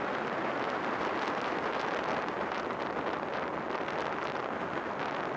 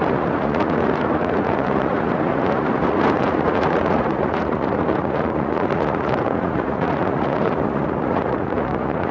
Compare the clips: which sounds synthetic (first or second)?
second